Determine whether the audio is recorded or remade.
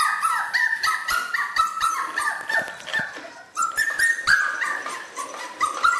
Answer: recorded